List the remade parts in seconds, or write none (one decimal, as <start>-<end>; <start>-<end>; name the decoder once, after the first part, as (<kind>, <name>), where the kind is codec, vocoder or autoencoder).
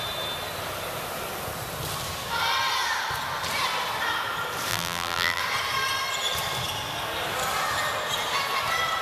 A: 4.7-5.4 (vocoder, BigVGAN v2)